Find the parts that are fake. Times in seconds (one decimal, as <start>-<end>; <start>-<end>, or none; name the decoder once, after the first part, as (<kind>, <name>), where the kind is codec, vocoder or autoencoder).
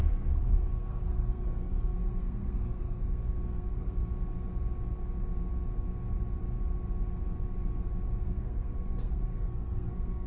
0.0-4.0 (codec, SNAC); 8.2-10.3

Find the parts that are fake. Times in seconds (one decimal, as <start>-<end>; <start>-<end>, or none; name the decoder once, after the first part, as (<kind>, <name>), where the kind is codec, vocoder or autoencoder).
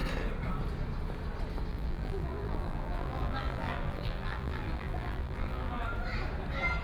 1.7-5.8 (vocoder, BigVGAN v2)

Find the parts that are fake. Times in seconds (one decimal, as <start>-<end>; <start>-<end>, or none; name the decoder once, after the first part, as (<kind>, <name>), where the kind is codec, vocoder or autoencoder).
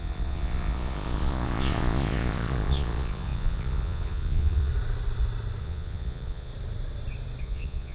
0.0-4.7 (vocoder, Vocos); 5.6-6.5; 7.4-7.9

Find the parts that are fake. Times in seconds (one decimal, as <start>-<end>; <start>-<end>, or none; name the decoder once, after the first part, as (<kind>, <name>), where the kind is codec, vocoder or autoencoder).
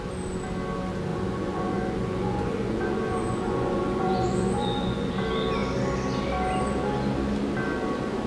1.1-5.1 (vocoder, Vocos)